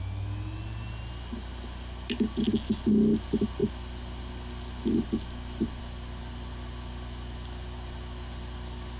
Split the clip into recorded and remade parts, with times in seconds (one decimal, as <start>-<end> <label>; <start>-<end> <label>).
0.0-9.0 recorded